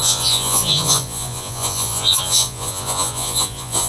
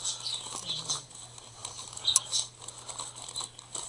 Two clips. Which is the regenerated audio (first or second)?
first